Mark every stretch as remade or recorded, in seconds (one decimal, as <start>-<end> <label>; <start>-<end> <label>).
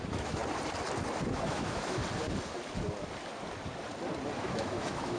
0.0-0.4 remade; 0.4-1.3 recorded; 1.3-2.0 remade; 2.0-4.4 recorded; 4.4-5.2 remade